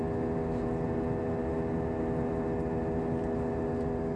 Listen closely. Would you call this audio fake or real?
real